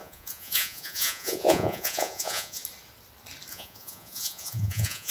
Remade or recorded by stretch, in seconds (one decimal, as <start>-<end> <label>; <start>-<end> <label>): 0.0-2.6 remade; 2.6-3.5 recorded; 3.5-5.1 remade